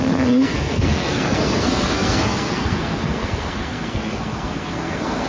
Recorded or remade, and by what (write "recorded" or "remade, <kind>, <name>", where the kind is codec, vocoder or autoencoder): remade, codec, SNAC